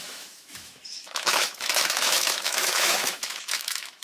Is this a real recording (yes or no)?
no